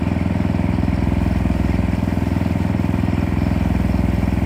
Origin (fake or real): real